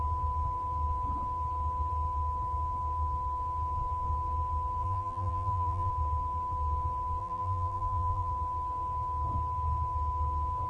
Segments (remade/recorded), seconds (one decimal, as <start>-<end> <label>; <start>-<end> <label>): 0.0-4.8 recorded; 4.8-5.9 remade; 5.9-7.2 recorded; 7.2-8.3 remade; 8.3-10.7 recorded